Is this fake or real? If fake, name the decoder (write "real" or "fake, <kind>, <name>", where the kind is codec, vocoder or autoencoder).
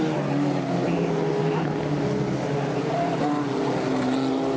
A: real